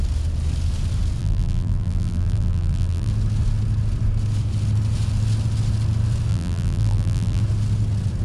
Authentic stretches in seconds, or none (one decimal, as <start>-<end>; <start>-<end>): 0.0-1.2; 3.1-6.3; 7.4-8.2

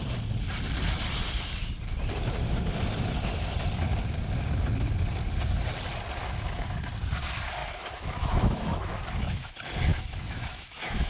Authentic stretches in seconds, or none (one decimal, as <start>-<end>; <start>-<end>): 0.0-7.6; 9.5-9.9